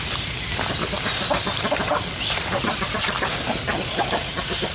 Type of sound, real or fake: real